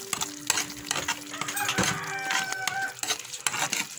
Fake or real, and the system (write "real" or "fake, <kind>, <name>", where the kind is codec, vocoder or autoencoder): real